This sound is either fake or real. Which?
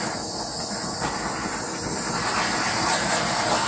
real